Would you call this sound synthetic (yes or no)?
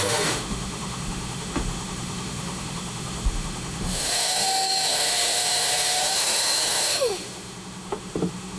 yes